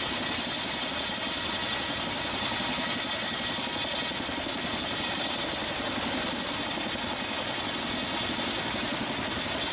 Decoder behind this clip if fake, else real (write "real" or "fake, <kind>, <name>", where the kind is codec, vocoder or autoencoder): real